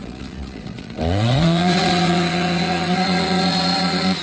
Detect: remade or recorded remade